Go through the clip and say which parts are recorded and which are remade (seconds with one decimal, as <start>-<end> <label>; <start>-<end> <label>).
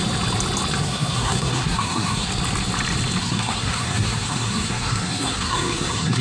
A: 0.0-0.8 recorded; 0.8-2.3 remade; 2.3-3.2 recorded; 3.2-6.2 remade